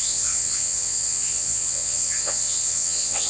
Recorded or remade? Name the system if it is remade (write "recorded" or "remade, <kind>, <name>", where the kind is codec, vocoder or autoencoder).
remade, vocoder, WaveNeXt